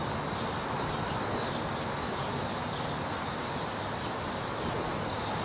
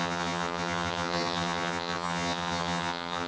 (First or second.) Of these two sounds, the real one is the first